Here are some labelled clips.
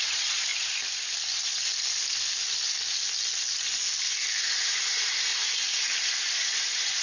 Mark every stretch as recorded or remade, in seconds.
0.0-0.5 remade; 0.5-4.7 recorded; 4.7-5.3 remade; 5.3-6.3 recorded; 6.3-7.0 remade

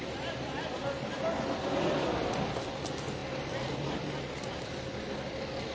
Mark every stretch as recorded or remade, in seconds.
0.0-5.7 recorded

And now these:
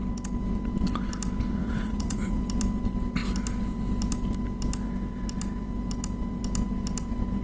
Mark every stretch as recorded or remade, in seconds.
0.0-1.6 recorded; 1.6-2.4 remade; 2.4-7.4 recorded